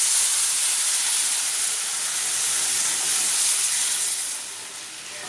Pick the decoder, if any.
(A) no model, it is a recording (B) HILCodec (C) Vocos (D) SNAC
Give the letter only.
A